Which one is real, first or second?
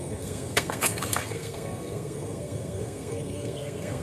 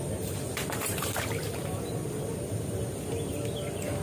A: second